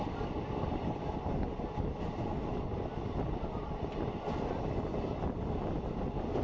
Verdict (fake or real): real